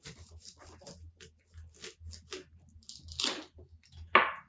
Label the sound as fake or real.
real